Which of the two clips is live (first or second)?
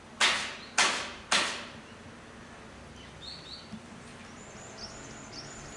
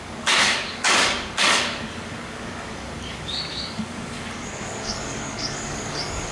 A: first